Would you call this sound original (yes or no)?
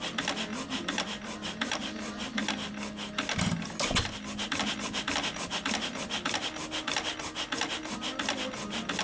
yes